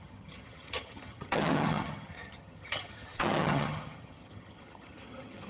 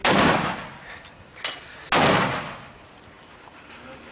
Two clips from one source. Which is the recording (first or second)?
second